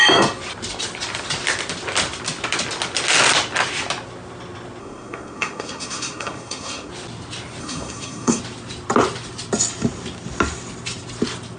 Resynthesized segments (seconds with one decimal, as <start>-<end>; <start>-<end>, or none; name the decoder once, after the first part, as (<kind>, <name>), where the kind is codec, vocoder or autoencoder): 4.8-6.9 (codec, SNAC); 7.6-8.4